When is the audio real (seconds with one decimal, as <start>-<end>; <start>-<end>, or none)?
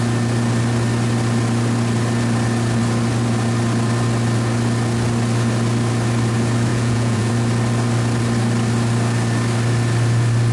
0.0-6.7; 7.3-10.5